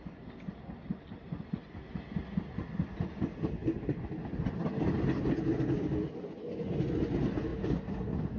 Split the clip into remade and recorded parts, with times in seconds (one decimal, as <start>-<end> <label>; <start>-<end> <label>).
0.0-8.4 recorded